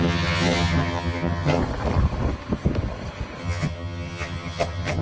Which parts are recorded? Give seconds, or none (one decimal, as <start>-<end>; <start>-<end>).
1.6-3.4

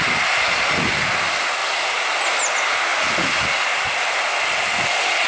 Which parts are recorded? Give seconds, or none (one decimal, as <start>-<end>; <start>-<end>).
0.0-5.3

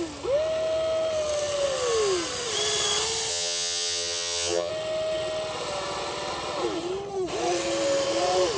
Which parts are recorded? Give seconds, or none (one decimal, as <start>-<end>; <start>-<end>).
0.0-3.3; 4.7-8.6